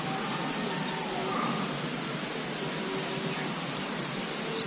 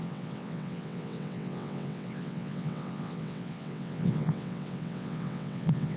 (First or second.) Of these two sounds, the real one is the first